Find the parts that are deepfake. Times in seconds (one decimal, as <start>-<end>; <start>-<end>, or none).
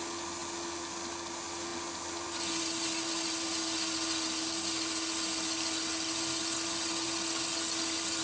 none